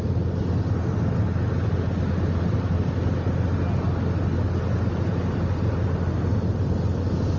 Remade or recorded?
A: recorded